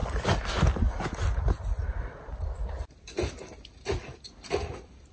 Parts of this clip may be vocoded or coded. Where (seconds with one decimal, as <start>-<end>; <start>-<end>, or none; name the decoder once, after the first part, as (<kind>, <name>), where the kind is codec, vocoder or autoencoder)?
none